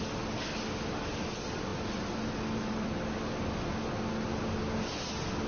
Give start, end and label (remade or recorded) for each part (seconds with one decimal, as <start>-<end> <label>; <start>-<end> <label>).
0.0-5.5 recorded